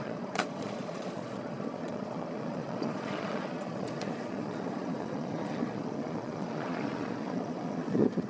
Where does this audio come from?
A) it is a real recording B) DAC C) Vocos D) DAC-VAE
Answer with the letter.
C